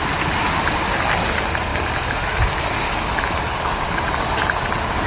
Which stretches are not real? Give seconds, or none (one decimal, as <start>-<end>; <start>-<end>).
none

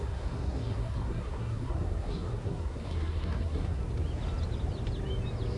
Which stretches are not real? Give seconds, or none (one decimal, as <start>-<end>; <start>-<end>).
0.0-3.8

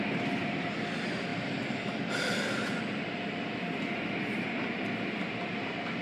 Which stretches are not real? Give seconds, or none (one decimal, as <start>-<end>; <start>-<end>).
none